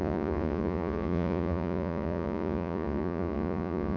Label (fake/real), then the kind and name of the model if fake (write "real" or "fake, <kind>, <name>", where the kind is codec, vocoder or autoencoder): fake, vocoder, Vocos